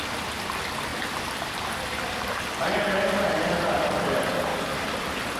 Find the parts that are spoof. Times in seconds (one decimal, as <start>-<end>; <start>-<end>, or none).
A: none